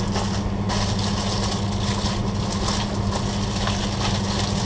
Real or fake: real